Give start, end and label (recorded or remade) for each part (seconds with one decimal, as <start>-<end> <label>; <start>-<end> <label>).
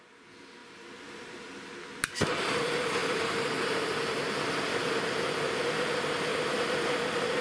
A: 0.0-0.6 recorded; 0.6-1.4 remade; 1.4-6.3 recorded; 6.3-6.8 remade; 6.8-7.4 recorded